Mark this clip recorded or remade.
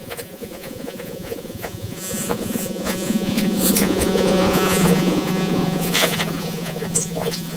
remade